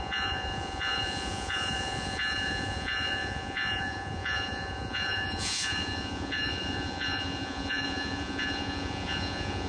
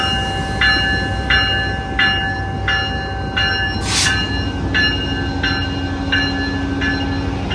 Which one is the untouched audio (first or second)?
second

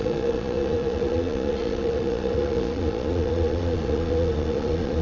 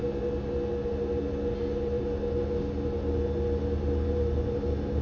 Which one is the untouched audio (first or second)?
second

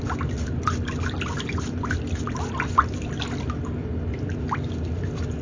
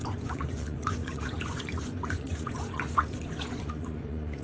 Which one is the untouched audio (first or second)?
first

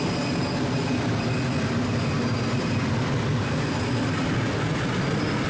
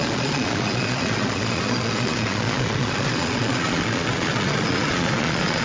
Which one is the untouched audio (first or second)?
first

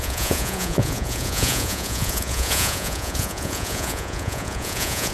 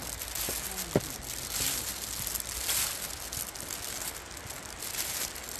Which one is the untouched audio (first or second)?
second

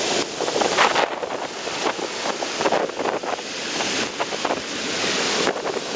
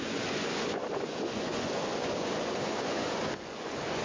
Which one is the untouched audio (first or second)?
first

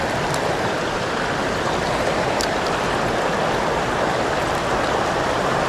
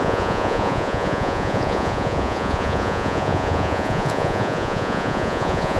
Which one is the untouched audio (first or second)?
first